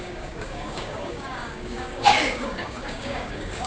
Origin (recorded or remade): remade